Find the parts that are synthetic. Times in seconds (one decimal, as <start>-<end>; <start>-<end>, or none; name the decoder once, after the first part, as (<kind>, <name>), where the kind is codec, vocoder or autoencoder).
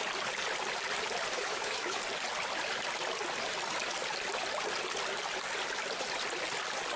1.3-2.0 (autoencoder, DAC-VAE)